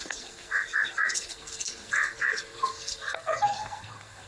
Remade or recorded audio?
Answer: remade